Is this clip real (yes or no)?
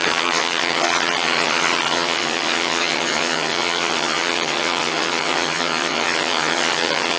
no